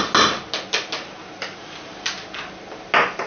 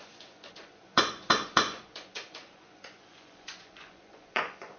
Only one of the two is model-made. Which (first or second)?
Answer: second